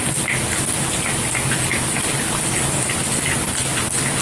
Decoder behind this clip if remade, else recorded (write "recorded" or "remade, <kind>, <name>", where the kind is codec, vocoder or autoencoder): recorded